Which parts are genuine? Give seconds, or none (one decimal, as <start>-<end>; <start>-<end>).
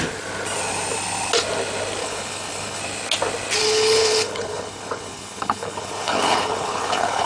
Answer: 0.0-2.0; 2.8-3.6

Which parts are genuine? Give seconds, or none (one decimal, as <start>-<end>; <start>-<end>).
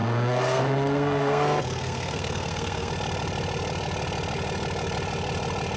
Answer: 2.9-5.8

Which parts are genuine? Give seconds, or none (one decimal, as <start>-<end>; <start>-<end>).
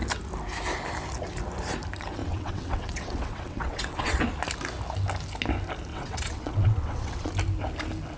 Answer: 0.0-2.2; 4.2-5.9; 7.3-8.2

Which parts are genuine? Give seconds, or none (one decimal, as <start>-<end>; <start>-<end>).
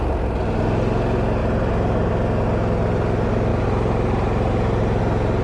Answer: 0.0-1.4; 2.1-3.5; 5.0-5.4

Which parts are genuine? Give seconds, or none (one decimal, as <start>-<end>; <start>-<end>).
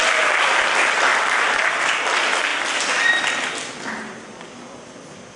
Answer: 0.0-1.1; 1.9-5.4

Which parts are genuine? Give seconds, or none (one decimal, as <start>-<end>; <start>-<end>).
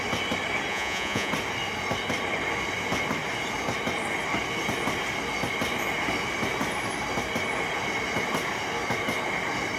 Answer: 0.0-0.7; 1.3-9.8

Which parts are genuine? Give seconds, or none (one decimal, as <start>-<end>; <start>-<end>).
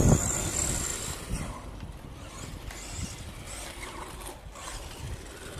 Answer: 0.0-5.6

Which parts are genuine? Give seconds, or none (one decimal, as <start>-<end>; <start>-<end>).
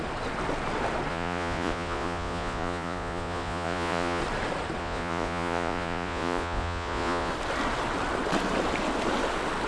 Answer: 0.0-1.1; 4.2-4.8; 7.3-9.7